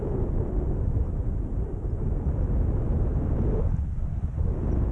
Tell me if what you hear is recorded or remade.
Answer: recorded